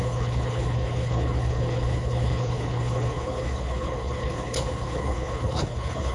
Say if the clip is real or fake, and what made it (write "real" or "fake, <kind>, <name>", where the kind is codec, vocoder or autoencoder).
fake, codec, HILCodec